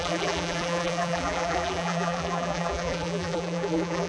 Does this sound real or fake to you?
fake